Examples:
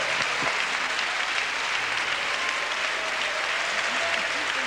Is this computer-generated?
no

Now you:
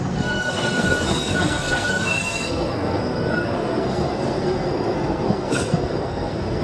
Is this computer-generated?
yes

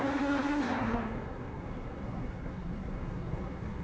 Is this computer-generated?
yes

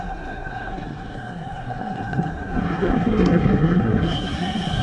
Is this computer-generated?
yes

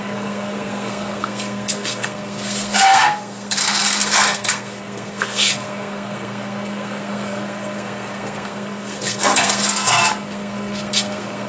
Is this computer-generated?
yes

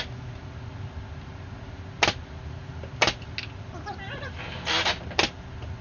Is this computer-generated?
no